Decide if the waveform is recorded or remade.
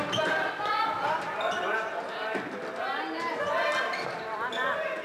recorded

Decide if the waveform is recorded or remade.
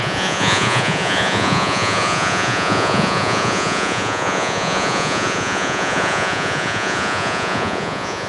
remade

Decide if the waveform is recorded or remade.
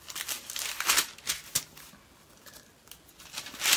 recorded